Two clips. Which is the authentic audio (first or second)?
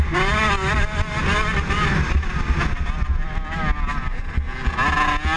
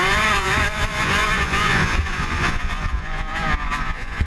first